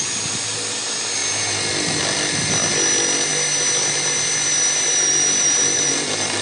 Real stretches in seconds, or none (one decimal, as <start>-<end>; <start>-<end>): 0.0-6.4